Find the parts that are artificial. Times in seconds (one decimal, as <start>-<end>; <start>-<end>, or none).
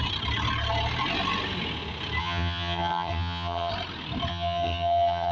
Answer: 2.2-3.7; 4.3-5.3